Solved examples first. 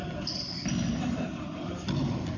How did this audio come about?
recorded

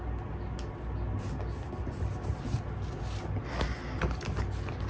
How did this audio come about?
recorded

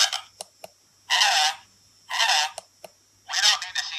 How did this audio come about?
recorded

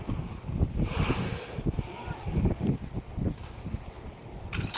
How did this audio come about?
recorded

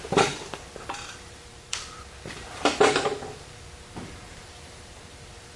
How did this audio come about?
remade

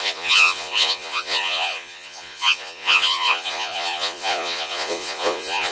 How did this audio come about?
remade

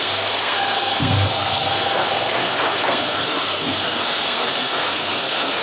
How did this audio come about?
remade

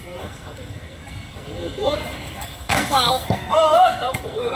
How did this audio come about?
remade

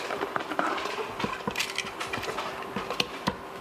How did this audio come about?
recorded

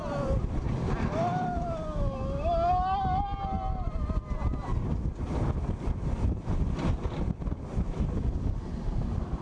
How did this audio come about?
recorded